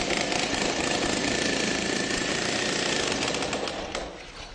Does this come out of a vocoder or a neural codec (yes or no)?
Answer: no